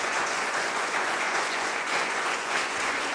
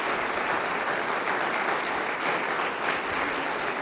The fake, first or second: first